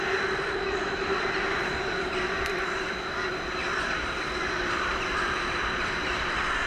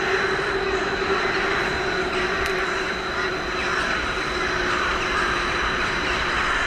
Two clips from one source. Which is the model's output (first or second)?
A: first